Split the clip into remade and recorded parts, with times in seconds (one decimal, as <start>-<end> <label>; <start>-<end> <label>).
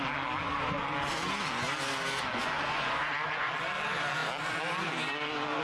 0.0-2.4 recorded; 2.4-3.5 remade; 3.5-5.6 recorded